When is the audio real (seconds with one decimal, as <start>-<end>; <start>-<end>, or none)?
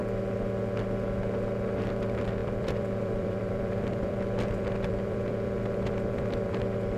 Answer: 0.0-2.4; 6.6-7.0